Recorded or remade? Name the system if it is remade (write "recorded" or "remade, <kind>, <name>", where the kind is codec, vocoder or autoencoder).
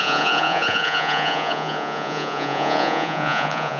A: remade, vocoder, Vocos